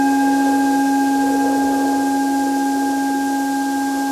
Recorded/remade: recorded